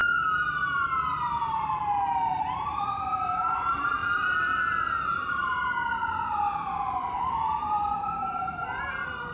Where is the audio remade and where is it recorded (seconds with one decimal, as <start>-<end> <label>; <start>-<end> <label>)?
0.0-1.5 recorded; 1.5-9.3 remade